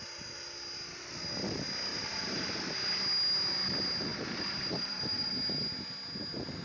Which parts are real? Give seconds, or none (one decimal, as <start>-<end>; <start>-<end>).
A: 0.0-1.9; 2.7-4.1; 5.3-6.6